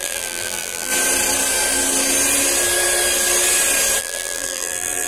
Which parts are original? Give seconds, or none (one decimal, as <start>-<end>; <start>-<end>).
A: 0.9-4.0

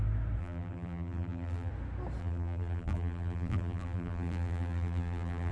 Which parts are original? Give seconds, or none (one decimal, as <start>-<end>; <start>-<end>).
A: 0.0-0.4; 1.7-2.2

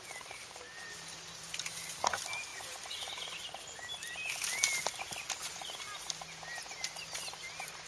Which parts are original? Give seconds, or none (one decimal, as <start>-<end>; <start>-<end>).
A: 0.0-7.9